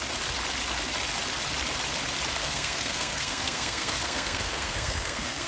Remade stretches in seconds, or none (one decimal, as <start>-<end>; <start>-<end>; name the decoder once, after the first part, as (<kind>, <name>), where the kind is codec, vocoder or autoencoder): 2.4-5.5 (codec, SNAC)